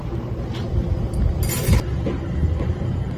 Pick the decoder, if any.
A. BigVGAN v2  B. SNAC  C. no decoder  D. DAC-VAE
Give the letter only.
C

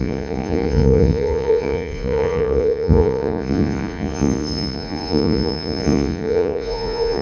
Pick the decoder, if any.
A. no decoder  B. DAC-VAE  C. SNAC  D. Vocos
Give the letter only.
D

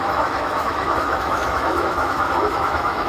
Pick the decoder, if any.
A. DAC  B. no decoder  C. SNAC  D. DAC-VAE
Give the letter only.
D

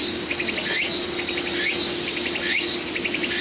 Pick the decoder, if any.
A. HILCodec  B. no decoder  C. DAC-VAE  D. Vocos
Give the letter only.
B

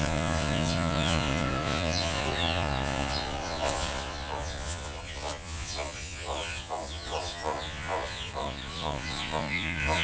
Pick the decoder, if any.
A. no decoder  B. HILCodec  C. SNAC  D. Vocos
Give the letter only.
D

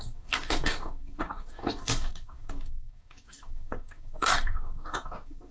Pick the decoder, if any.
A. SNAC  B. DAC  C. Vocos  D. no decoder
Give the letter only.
B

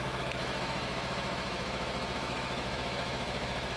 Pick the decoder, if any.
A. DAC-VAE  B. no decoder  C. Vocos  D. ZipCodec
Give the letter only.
A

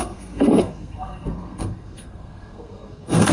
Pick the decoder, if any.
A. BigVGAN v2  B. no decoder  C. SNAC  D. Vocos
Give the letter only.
C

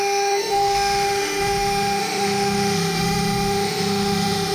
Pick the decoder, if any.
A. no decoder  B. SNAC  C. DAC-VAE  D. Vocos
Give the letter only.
C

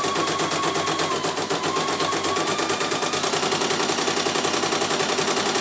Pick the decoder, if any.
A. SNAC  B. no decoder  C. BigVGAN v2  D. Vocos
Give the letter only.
B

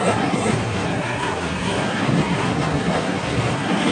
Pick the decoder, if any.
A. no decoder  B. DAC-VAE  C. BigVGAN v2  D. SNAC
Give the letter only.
D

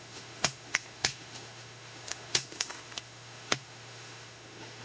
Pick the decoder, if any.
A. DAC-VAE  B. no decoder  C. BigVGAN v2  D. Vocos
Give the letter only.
A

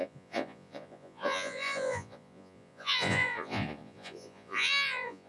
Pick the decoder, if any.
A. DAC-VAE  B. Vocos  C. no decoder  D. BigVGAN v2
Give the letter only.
B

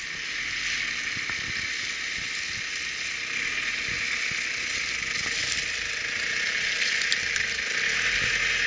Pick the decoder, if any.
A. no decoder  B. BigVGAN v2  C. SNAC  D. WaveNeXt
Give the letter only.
A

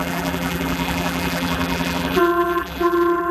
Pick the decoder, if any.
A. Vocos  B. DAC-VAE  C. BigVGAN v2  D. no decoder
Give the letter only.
C